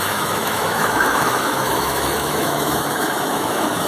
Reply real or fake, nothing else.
fake